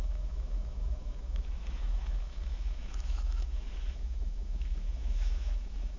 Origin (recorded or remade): remade